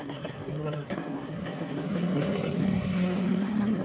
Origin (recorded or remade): remade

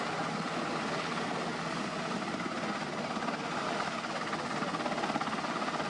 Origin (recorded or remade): recorded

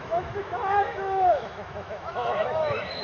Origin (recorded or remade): remade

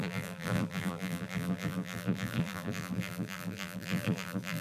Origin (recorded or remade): remade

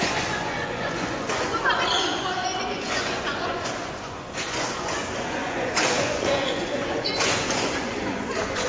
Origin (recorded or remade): remade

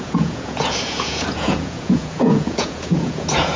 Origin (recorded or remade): remade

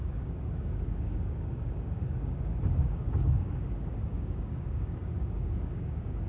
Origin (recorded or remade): remade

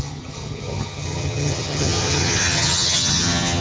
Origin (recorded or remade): remade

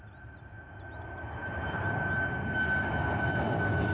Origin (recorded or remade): recorded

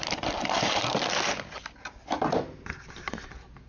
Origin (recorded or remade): recorded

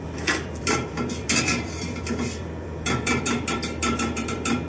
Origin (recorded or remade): remade